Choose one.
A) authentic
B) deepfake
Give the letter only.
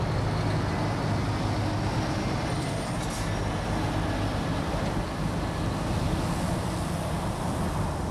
A